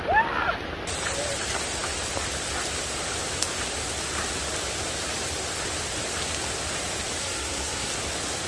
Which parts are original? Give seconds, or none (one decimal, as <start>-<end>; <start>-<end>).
0.0-7.2; 7.9-8.5